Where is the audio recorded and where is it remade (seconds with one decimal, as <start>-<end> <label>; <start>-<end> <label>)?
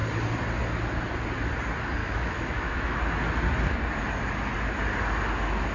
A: 0.0-2.0 recorded; 2.0-3.0 remade; 3.0-5.7 recorded